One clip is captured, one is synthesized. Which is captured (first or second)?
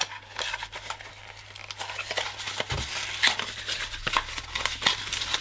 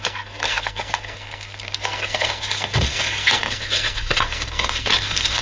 first